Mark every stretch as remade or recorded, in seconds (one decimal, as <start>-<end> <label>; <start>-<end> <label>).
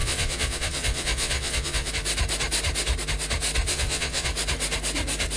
0.0-1.9 remade; 1.9-3.7 recorded; 3.7-4.3 remade; 4.3-5.4 recorded